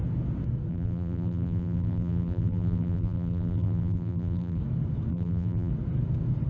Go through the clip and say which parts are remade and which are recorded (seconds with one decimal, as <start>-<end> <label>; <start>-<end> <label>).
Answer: 0.0-0.7 recorded; 0.7-4.6 remade; 4.6-5.1 recorded; 5.1-5.7 remade; 5.7-6.5 recorded